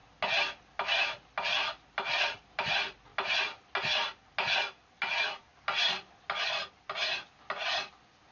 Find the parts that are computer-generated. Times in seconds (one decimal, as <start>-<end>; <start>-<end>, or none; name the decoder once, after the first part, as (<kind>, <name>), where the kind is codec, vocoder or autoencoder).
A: none